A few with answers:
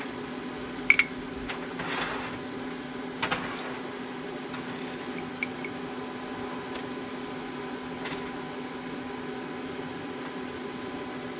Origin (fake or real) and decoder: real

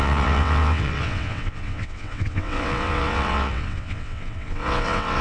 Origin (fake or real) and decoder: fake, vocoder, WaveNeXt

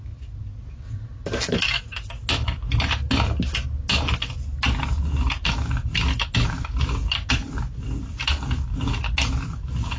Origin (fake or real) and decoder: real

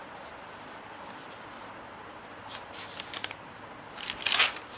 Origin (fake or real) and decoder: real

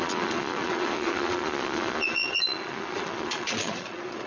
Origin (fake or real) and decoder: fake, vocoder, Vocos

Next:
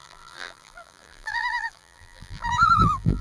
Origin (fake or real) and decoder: fake, vocoder, BigVGAN v2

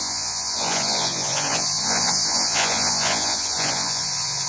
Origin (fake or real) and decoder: fake, vocoder, Vocos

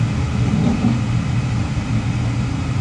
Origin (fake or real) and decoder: real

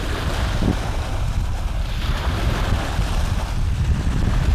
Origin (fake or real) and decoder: real